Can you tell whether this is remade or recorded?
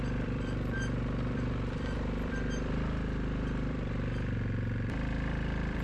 remade